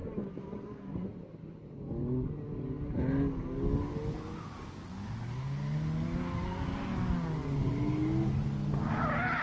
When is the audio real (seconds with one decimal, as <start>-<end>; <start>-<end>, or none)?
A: 1.7-9.4